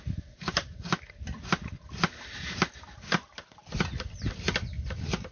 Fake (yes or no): no